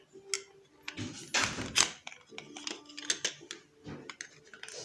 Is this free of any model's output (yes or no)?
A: yes